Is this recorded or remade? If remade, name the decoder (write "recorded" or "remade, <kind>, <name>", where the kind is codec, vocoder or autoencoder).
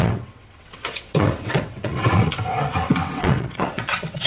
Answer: remade, vocoder, WaveNeXt